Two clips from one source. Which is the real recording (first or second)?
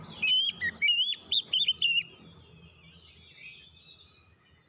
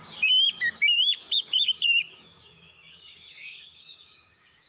first